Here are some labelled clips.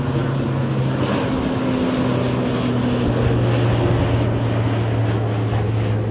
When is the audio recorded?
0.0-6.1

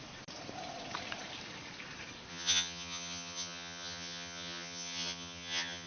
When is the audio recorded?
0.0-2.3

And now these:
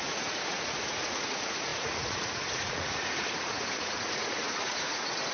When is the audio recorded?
none